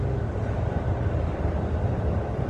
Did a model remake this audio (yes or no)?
no